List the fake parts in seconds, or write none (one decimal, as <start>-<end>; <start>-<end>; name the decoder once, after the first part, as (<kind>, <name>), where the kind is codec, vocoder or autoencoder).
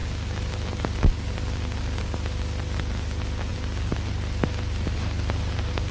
none